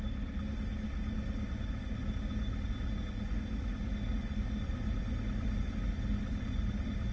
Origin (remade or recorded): recorded